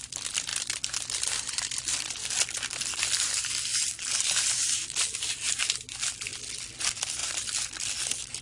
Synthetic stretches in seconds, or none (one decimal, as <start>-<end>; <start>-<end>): 0.0-6.3; 6.8-8.4